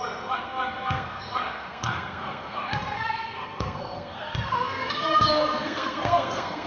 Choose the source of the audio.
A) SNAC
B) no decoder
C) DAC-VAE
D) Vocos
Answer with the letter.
A